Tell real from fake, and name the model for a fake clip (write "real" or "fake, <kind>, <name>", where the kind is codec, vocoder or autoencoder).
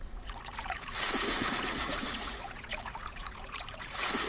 fake, vocoder, Vocos